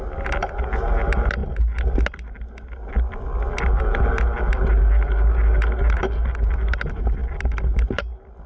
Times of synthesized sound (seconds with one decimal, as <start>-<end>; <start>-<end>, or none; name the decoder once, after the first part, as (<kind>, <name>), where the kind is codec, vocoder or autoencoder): none